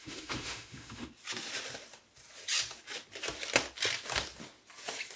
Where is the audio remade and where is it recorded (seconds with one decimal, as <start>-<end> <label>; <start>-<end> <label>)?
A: 0.0-1.1 remade; 1.1-5.2 recorded